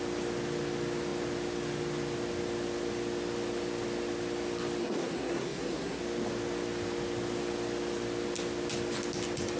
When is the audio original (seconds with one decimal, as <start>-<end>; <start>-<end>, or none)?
0.0-4.8; 6.0-9.6